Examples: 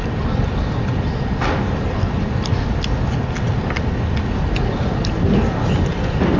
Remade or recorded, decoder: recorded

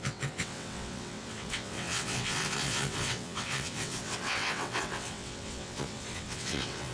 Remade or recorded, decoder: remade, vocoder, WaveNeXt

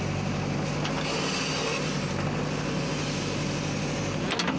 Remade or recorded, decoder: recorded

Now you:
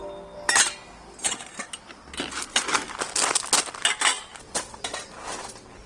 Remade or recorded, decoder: recorded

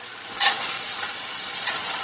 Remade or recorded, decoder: remade, vocoder, Vocos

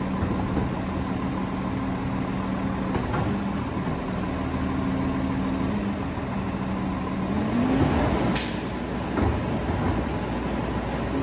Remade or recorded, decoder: recorded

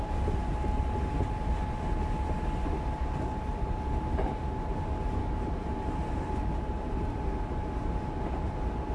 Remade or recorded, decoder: recorded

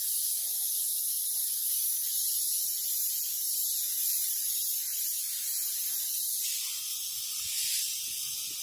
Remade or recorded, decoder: recorded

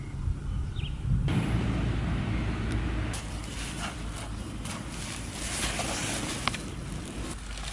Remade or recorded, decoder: recorded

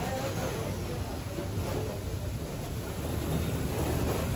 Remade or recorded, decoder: recorded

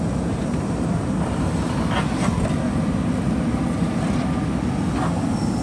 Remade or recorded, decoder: recorded